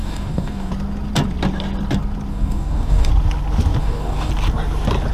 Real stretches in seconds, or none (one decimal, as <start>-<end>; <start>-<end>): 0.7-2.3; 3.1-3.8; 4.3-5.1